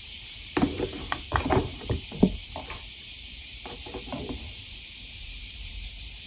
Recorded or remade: remade